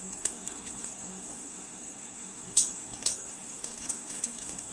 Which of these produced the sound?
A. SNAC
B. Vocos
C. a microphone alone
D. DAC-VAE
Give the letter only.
A